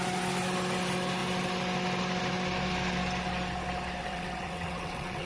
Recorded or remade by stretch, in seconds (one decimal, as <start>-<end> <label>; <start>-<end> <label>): 0.0-4.0 recorded; 4.0-5.3 remade